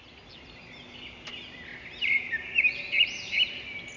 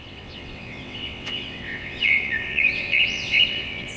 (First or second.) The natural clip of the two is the first